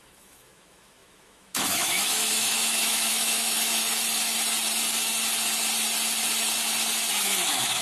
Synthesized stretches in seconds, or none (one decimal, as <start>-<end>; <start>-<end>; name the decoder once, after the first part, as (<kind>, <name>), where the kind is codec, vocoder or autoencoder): 0.0-3.8 (autoencoder, DAC-VAE); 7.1-7.8